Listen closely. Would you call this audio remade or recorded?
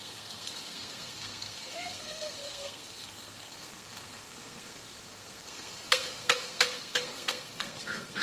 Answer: remade